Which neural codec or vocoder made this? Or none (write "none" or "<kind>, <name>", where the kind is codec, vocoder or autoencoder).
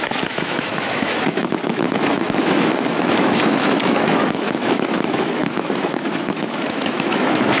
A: autoencoder, DAC-VAE